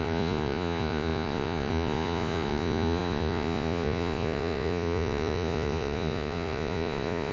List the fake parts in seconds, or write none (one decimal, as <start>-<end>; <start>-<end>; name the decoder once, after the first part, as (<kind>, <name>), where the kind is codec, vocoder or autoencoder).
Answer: 0.0-7.3 (vocoder, Vocos)